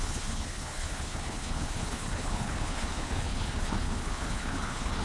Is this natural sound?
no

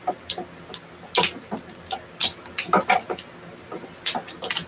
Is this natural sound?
yes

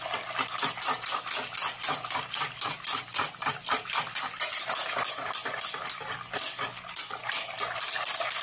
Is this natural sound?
yes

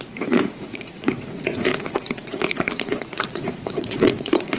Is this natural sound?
no